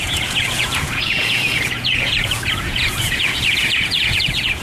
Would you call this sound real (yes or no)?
no